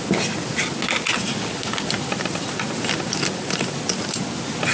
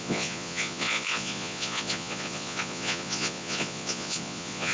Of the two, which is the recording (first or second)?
first